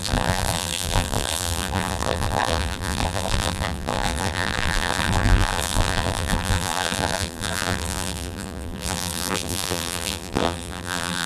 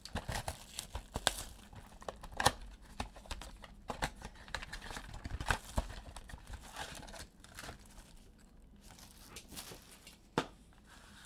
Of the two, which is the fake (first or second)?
first